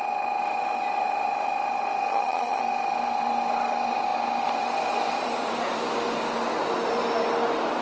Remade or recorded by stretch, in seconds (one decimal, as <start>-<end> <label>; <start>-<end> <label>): 0.0-2.1 recorded; 2.1-2.6 remade; 2.6-7.8 recorded